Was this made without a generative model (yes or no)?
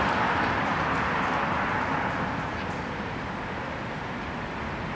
yes